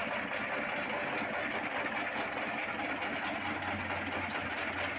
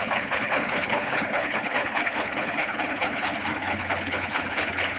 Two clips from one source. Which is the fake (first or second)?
second